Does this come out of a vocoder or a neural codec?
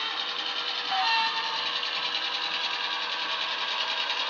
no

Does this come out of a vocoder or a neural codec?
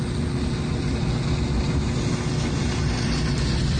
no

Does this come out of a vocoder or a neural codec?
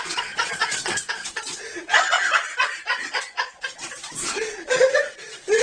yes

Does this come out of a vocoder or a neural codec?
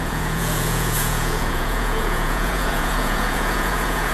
yes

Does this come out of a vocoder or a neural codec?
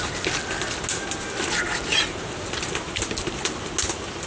no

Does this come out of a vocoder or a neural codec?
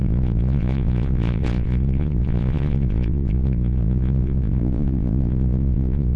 yes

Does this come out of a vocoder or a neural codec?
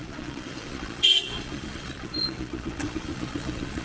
yes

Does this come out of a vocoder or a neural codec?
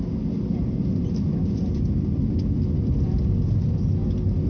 no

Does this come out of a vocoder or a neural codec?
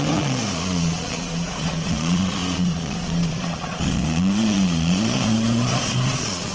yes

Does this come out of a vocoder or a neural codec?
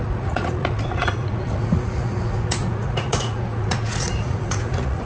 yes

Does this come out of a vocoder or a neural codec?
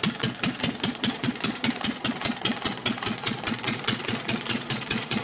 yes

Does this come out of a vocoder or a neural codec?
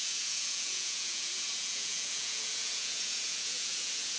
yes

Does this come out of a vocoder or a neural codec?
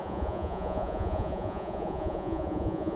yes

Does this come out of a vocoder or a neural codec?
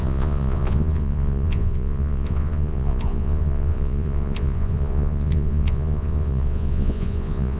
yes